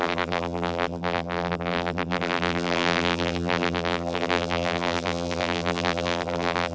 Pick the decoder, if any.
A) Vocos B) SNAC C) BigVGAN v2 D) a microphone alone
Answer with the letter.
C